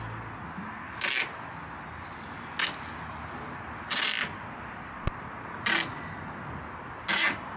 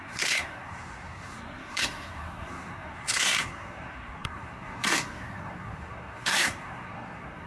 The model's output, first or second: second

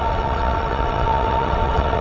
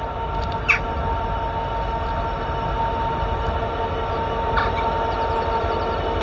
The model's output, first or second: first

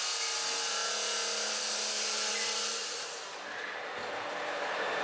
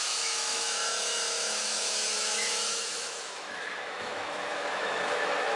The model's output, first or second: second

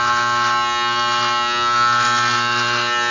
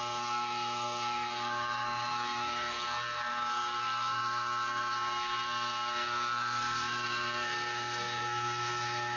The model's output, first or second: second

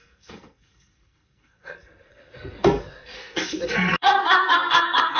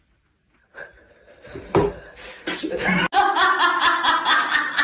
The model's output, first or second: first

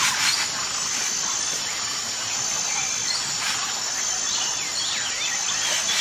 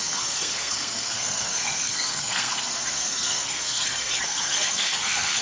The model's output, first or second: second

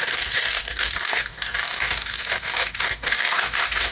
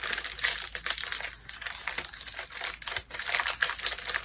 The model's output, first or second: first